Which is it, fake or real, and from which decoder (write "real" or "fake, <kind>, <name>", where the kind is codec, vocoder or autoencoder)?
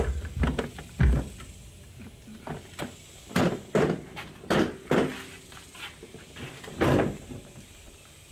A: real